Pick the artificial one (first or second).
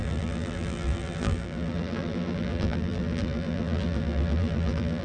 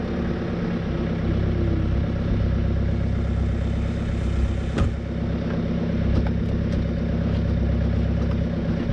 first